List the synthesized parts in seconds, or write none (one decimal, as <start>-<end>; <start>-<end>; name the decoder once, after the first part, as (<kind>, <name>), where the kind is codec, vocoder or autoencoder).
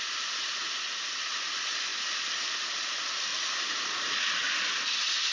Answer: none